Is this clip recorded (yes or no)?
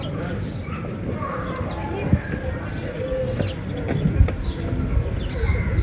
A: yes